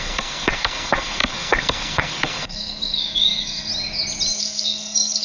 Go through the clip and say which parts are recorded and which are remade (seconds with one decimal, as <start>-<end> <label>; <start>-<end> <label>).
0.0-3.7 remade; 3.7-4.4 recorded; 4.4-5.2 remade